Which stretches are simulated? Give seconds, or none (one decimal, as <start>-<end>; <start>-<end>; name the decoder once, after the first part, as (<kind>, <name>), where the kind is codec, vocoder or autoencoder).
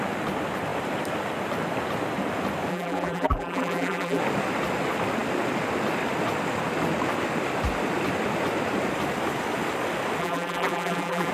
2.7-4.2 (vocoder, BigVGAN v2); 10.2-11.3